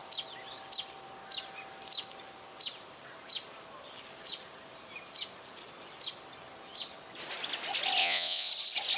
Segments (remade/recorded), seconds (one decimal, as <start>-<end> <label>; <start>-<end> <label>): 0.0-8.0 recorded; 8.0-8.5 remade; 8.5-9.0 recorded